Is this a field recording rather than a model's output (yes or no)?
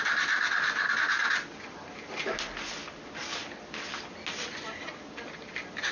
yes